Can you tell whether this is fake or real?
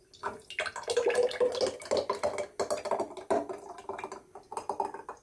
real